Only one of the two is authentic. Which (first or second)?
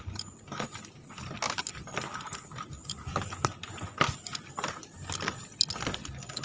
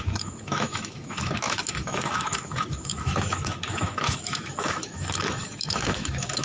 first